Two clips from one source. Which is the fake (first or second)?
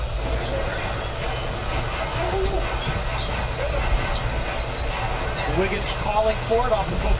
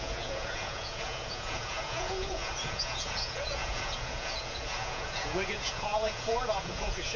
second